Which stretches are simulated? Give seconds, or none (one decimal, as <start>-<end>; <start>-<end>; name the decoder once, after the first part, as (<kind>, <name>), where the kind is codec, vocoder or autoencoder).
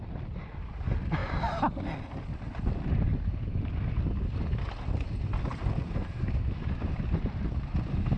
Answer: none